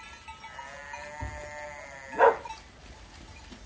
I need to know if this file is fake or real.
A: real